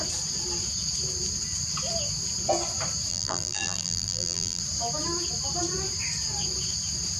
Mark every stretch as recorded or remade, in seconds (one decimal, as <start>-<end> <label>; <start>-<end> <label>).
0.0-3.1 recorded; 3.1-4.6 remade; 4.6-7.2 recorded